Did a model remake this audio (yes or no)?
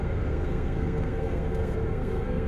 yes